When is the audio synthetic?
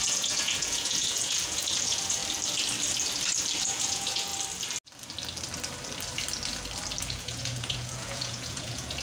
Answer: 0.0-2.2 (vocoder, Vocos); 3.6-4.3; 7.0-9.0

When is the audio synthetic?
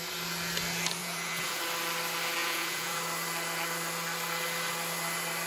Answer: 1.0-1.6 (vocoder, Vocos); 2.4-3.0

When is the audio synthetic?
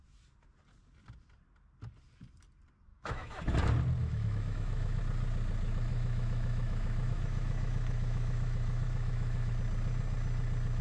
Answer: 2.9-3.4 (autoencoder, DAC-VAE); 4.0-5.0; 5.9-9.5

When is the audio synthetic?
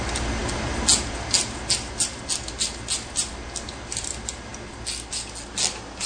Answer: none